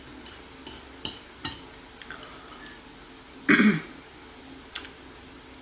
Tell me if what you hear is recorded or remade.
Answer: recorded